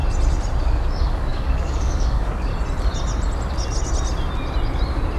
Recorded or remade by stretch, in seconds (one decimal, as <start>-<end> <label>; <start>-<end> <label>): 0.0-0.6 recorded; 0.6-2.5 remade; 2.5-5.2 recorded